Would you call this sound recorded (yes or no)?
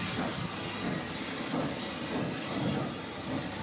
no